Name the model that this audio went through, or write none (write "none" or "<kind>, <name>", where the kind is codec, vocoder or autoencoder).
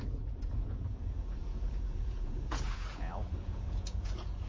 vocoder, Vocos